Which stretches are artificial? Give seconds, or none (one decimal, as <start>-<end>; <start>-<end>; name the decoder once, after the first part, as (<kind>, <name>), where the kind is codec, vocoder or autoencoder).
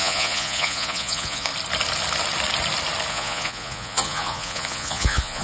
0.0-1.5 (vocoder, Vocos); 3.1-5.4